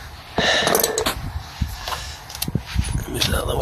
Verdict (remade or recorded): recorded